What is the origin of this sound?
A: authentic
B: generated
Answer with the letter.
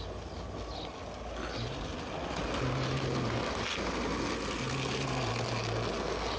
A